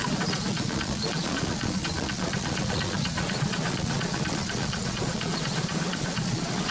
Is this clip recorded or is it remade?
remade